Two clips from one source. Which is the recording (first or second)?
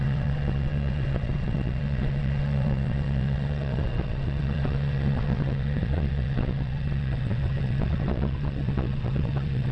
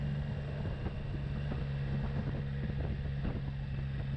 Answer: second